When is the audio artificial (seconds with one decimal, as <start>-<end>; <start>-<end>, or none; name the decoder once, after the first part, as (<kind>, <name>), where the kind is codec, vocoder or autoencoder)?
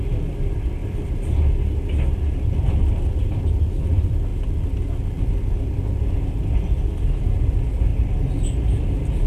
none